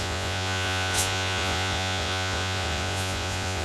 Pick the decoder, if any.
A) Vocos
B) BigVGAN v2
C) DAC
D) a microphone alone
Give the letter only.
A